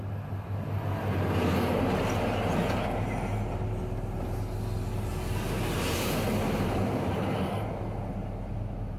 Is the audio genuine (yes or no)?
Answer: yes